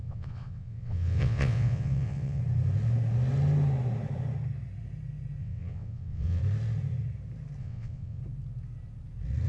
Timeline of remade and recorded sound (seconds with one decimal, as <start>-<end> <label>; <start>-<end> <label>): 0.0-2.4 remade; 2.4-5.4 recorded; 5.4-6.4 remade; 6.4-7.6 recorded; 7.6-8.2 remade; 8.2-9.5 recorded